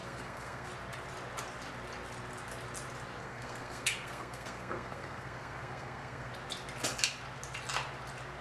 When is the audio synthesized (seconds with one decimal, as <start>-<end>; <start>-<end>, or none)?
0.0-0.7; 3.2-6.3

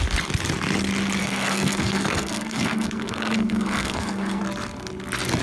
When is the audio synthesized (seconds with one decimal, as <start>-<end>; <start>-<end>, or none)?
1.2-4.4

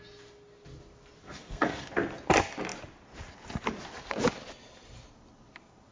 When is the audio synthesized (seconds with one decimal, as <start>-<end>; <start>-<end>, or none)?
1.2-1.9

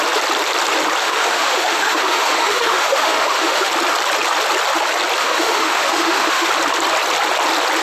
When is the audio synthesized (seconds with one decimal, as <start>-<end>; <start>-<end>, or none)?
1.0-3.7; 5.2-6.5